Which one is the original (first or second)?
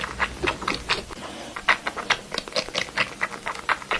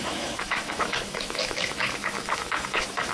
first